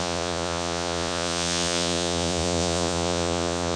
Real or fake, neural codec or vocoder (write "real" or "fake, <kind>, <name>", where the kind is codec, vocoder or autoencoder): fake, vocoder, Vocos